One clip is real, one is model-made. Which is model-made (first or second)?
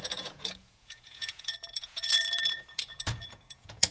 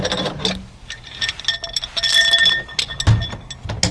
first